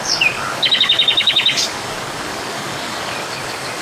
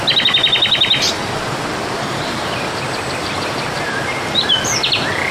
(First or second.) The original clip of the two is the second